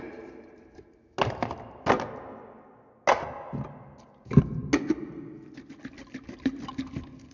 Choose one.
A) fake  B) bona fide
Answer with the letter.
B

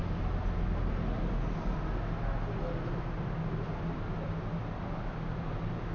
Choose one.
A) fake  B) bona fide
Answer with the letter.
B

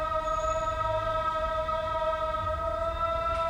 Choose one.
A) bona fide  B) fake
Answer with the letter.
A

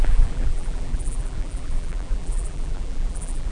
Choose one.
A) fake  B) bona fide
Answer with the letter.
A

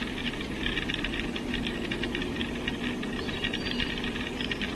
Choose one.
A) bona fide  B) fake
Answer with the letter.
A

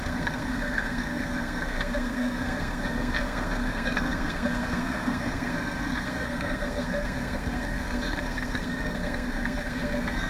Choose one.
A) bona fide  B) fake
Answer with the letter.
B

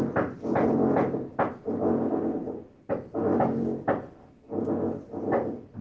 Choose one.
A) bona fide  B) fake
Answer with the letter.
A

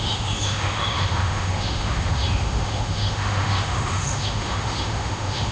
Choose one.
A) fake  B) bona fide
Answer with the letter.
A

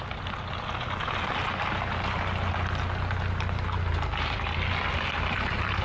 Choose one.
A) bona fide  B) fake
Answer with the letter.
A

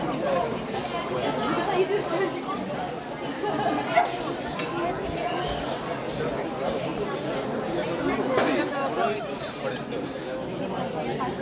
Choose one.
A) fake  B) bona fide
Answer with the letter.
B